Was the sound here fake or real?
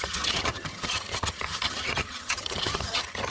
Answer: fake